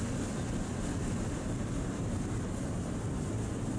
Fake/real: fake